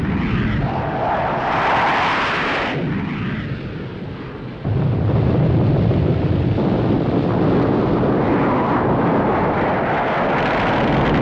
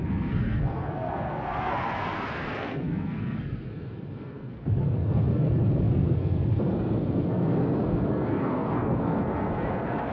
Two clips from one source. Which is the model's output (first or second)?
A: second